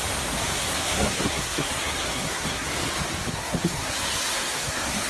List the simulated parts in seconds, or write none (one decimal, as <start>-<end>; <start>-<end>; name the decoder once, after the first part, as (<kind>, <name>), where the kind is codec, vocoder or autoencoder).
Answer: 0.6-2.7 (codec, SNAC); 3.3-5.1